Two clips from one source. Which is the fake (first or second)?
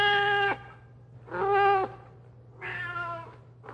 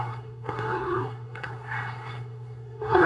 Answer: second